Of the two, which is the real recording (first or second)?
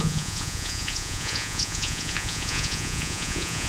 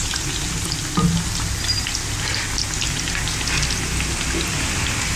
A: second